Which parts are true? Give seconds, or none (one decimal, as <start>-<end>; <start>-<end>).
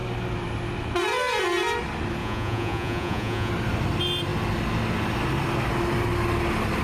0.0-2.2; 3.5-6.8